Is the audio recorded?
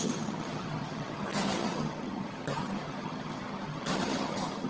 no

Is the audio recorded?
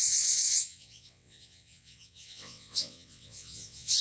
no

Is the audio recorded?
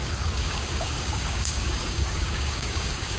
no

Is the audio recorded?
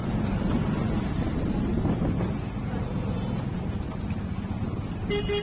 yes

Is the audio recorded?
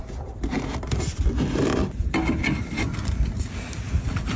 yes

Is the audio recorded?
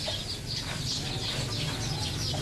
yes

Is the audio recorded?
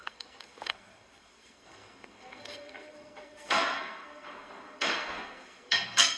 no